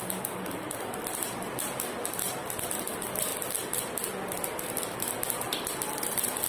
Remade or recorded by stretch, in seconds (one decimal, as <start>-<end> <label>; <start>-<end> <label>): 0.0-6.5 recorded